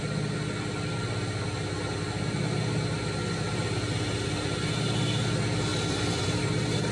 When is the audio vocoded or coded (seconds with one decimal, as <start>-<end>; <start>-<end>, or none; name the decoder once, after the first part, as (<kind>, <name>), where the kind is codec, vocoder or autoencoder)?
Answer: 5.7-6.4 (vocoder, BigVGAN v2)